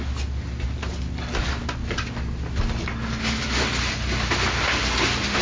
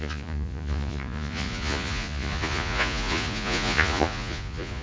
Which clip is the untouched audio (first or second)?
first